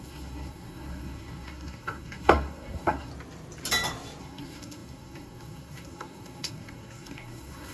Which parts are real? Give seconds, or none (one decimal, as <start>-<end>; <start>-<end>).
3.1-4.2